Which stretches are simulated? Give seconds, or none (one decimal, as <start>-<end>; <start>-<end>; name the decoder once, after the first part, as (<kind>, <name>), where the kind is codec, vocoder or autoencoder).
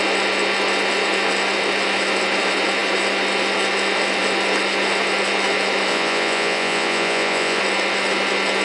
5.9-7.6 (vocoder, Vocos)